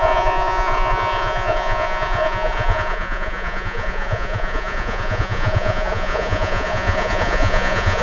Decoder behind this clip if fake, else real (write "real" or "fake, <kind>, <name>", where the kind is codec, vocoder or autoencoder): fake, vocoder, Vocos